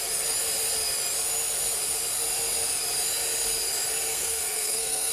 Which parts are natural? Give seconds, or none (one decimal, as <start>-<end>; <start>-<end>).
0.0-4.1